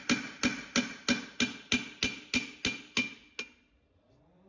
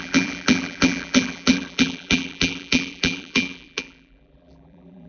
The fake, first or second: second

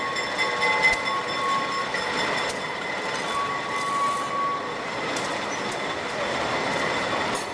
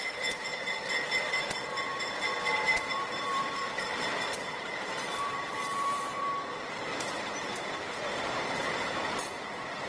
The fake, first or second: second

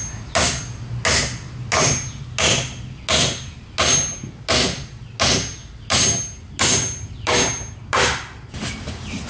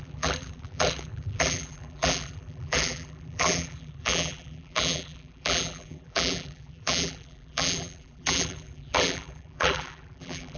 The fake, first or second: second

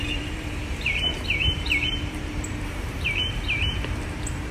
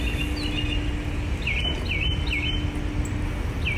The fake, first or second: first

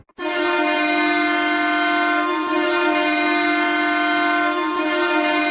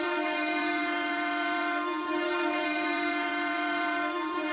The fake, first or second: second